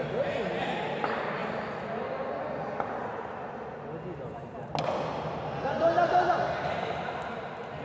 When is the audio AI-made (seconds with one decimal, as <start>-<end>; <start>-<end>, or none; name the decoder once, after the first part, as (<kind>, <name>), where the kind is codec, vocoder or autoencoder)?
none